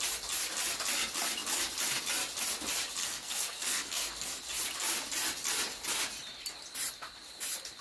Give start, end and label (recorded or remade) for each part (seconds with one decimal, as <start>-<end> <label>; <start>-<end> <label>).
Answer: 0.0-3.0 recorded; 3.0-4.4 remade; 4.4-7.8 recorded